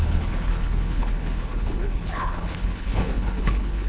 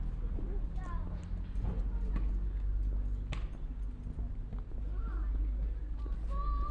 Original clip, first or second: second